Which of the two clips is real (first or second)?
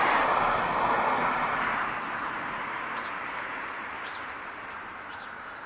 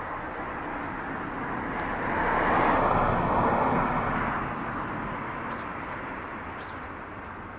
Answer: second